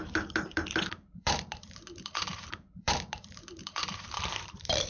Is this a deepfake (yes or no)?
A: yes